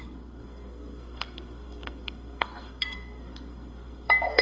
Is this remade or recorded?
remade